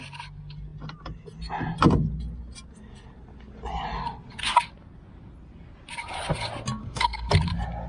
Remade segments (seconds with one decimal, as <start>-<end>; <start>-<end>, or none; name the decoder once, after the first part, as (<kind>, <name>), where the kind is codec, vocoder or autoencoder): 6.8-7.3 (codec, SNAC)